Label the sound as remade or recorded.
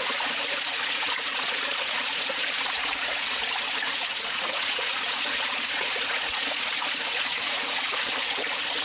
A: remade